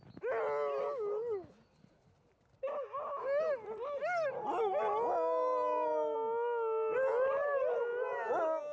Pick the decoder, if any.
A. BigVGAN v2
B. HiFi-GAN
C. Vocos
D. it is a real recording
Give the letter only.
D